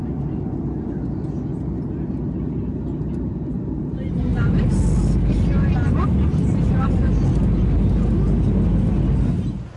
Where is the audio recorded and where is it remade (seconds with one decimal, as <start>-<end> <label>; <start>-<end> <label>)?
0.0-9.8 recorded